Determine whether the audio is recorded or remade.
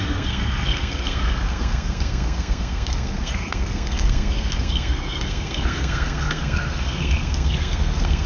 remade